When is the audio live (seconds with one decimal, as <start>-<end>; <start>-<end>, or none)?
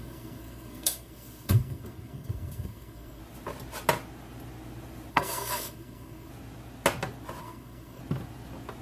3.2-5.1; 6.3-7.4; 8.0-8.8